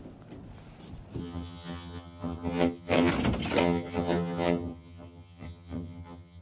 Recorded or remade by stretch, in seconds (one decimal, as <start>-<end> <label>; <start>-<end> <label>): 0.0-1.2 recorded; 1.2-3.1 remade; 3.1-3.6 recorded; 3.6-6.4 remade